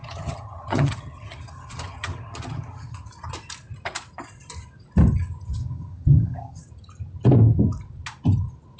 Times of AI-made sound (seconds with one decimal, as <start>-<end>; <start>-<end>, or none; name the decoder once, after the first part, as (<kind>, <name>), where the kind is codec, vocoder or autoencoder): 0.0-3.1 (vocoder, HiFi-GAN); 5.6-6.6